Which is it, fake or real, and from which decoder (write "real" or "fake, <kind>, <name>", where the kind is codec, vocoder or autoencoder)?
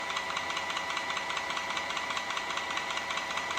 real